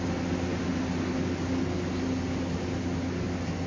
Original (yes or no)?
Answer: yes